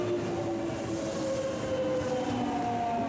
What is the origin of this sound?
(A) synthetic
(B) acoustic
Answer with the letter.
B